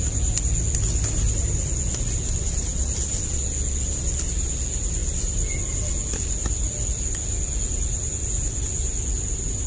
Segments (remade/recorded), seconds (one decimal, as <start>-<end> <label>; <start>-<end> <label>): 0.0-9.7 recorded